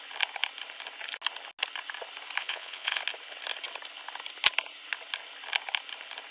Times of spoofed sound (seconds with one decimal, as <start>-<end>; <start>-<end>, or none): 2.4-3.0